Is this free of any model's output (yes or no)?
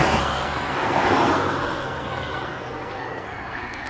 no